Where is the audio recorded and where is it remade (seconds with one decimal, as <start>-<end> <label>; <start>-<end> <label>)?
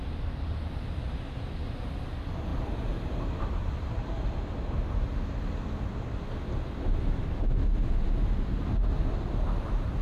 0.0-2.5 recorded; 2.5-3.7 remade; 3.7-7.7 recorded; 7.7-8.6 remade; 8.6-10.0 recorded